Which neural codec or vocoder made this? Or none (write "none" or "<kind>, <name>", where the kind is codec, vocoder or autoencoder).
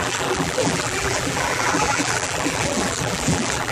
vocoder, BigVGAN v2